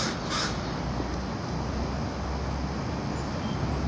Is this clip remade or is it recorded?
recorded